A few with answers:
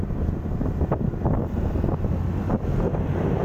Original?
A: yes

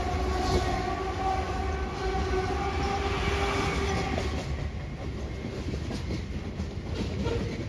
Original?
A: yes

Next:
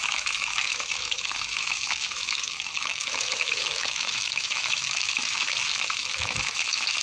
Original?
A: no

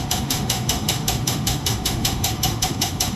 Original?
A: no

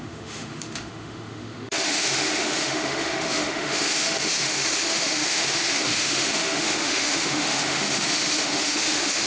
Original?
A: no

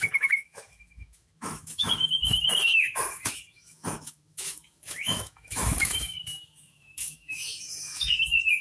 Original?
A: no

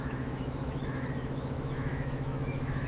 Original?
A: no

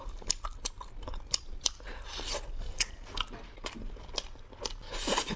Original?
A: yes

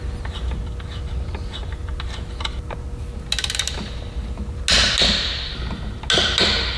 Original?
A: yes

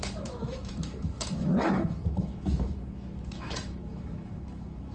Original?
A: no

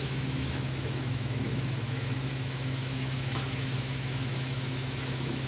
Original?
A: no